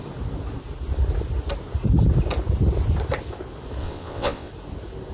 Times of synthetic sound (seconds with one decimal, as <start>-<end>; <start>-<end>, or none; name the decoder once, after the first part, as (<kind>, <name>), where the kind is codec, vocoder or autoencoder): 3.8-4.5 (vocoder, WaveNeXt)